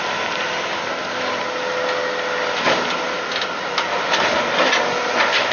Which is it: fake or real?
real